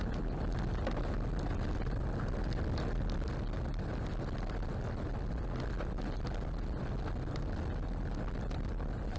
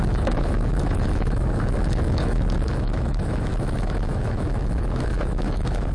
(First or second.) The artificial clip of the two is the second